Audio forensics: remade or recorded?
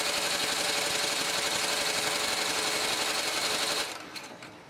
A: recorded